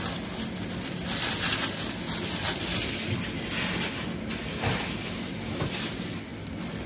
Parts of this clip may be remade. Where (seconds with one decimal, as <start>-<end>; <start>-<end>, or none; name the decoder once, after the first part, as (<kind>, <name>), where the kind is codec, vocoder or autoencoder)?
none